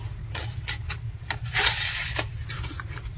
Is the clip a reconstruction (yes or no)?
no